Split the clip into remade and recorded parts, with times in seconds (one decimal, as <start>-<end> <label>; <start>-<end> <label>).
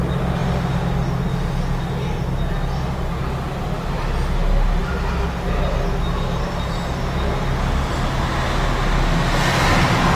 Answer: 0.0-10.1 recorded